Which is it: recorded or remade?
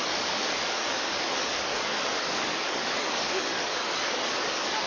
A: remade